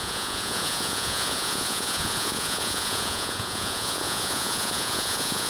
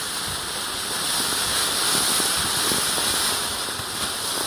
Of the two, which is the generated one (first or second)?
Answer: first